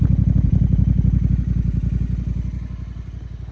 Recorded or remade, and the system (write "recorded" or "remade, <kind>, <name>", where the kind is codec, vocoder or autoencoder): recorded